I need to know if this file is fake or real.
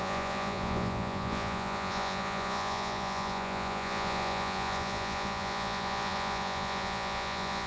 fake